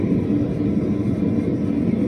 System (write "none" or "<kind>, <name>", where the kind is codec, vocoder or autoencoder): none